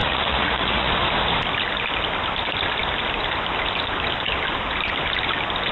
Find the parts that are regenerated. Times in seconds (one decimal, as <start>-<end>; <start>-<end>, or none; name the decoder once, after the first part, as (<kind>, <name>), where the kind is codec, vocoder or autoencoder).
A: 0.0-0.9 (vocoder, Vocos)